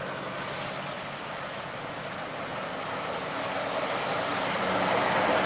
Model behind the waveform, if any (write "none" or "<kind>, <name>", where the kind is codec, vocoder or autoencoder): none